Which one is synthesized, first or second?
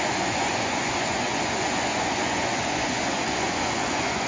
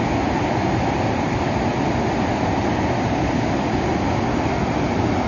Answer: first